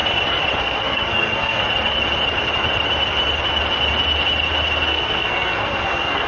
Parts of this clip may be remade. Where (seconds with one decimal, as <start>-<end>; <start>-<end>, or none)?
0.6-1.6; 4.9-6.3